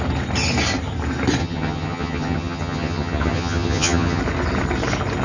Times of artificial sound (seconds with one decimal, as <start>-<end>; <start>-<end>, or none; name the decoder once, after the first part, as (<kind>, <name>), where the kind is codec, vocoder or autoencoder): 1.4-4.2 (vocoder, HiFi-GAN)